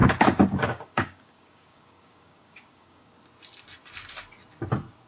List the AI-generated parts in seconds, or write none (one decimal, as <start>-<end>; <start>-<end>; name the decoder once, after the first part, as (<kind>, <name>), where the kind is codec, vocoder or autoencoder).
0.0-3.1 (codec, DAC)